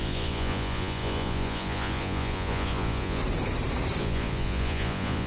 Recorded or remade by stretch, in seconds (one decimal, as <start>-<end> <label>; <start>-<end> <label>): 0.0-3.2 remade; 3.2-4.0 recorded; 4.0-5.3 remade